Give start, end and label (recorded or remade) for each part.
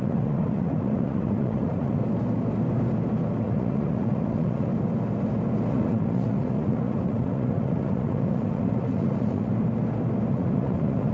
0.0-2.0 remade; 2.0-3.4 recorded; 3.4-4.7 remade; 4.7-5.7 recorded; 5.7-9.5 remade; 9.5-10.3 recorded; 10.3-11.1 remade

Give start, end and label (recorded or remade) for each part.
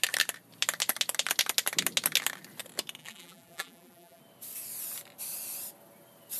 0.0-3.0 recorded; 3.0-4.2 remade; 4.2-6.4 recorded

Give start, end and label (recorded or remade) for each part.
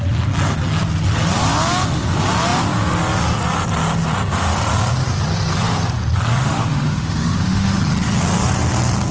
0.0-6.4 recorded; 6.4-7.8 remade; 7.8-9.1 recorded